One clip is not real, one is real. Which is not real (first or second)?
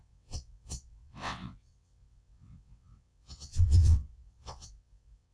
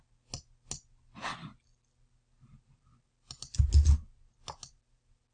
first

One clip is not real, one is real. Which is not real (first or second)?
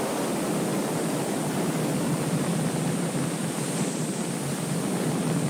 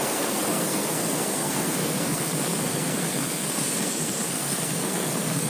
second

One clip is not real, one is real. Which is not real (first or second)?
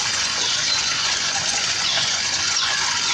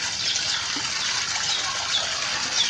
first